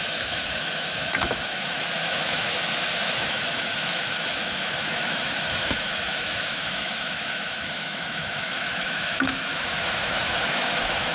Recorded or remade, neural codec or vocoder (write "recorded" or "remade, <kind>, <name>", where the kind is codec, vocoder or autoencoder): remade, autoencoder, DAC-VAE